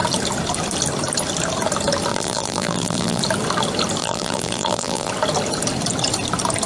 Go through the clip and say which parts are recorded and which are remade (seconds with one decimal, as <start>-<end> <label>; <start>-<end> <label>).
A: 0.0-2.1 recorded; 2.1-3.2 remade; 3.2-4.0 recorded; 4.0-5.1 remade; 5.1-6.7 recorded